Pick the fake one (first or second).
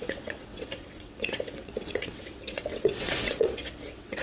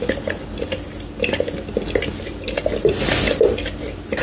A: first